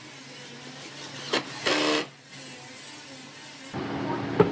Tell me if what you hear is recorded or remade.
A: recorded